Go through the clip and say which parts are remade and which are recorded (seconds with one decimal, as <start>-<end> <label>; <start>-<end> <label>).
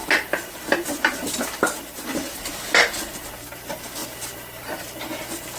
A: 0.0-5.6 recorded